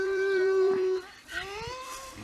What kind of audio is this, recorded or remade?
remade